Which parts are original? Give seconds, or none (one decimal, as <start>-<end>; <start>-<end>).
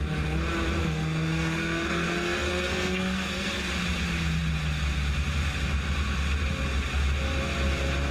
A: 0.0-0.8; 3.7-8.1